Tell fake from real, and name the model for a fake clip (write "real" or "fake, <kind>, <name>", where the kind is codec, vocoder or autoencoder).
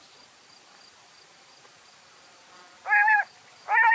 real